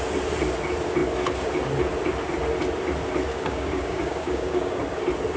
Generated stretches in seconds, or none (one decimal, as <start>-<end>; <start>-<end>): 3.3-4.7